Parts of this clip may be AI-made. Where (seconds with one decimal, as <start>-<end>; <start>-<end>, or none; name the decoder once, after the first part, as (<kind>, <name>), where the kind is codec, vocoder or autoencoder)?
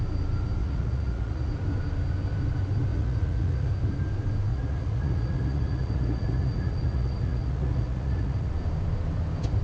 0.6-1.5 (vocoder, Vocos); 2.9-3.7; 4.5-8.5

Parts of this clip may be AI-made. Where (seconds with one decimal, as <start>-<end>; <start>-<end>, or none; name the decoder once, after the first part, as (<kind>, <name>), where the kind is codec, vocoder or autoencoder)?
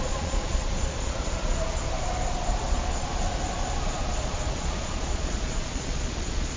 0.0-1.8 (vocoder, Vocos); 2.6-3.1; 4.0-6.6